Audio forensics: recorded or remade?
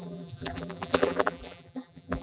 remade